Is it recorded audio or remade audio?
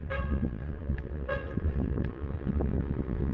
remade